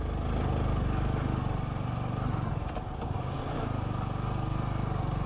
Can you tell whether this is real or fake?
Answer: real